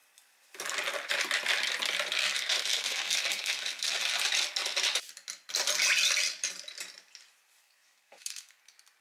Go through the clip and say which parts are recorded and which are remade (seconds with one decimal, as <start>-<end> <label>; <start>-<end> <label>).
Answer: 0.0-2.2 recorded; 2.2-4.0 remade; 4.0-7.6 recorded; 7.6-8.6 remade; 8.6-9.0 recorded